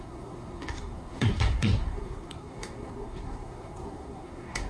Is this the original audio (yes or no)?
no